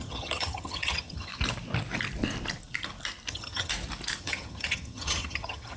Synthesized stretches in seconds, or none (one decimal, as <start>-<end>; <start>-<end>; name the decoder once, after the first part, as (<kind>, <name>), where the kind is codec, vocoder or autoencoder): 0.0-1.3 (vocoder, HiFi-GAN); 3.3-3.7; 4.2-5.8